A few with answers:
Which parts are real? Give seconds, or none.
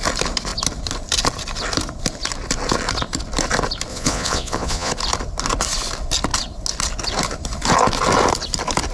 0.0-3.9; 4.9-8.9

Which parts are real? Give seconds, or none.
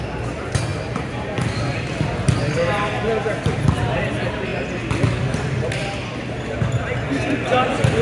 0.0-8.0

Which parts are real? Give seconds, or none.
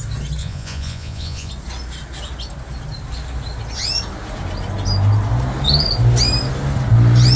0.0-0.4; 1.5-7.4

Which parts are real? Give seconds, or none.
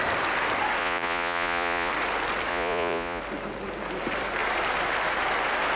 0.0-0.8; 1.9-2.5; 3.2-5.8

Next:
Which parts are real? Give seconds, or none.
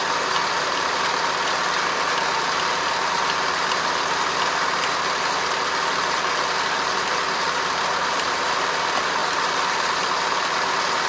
0.0-11.1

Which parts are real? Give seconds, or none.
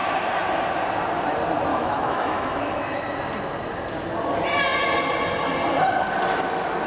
0.0-1.7; 3.0-6.9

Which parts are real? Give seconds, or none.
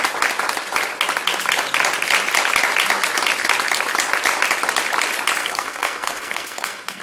0.0-5.4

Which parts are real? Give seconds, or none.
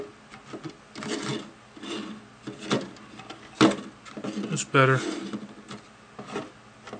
0.0-7.0